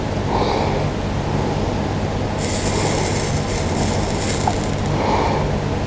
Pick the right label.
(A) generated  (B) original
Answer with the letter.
B